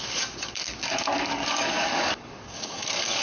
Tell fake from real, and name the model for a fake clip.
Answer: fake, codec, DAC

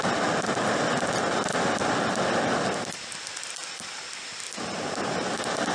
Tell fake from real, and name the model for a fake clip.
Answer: real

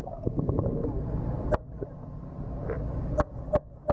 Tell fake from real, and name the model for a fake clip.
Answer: real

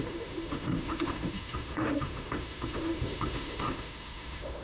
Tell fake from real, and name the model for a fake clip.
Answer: fake, autoencoder, DAC-VAE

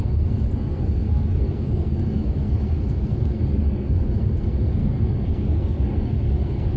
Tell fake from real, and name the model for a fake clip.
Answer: fake, codec, SNAC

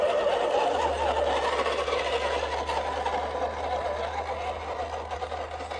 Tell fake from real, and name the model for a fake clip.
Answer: real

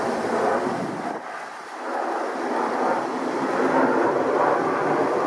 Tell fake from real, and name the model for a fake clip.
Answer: fake, vocoder, BigVGAN v2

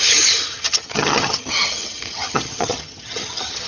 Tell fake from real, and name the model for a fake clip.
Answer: fake, vocoder, HiFi-GAN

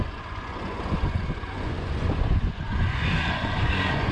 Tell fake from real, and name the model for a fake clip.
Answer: fake, vocoder, Vocos